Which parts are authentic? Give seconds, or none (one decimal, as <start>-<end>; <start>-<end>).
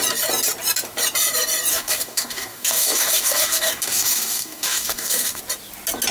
0.0-1.7; 5.4-6.1